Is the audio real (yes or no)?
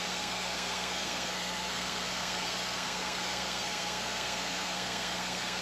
no